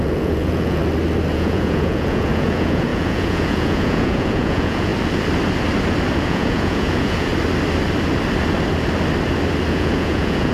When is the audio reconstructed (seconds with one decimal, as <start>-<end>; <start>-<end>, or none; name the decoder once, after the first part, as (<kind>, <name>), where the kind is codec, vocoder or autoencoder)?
0.0-0.8 (vocoder, Vocos); 1.3-4.9; 6.2-7.3; 9.7-10.5